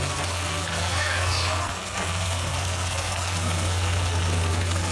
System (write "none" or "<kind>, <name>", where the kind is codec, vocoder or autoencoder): codec, SNAC